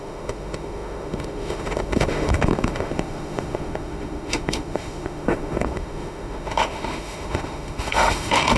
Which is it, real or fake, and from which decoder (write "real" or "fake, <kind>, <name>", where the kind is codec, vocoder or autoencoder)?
fake, autoencoder, DAC-VAE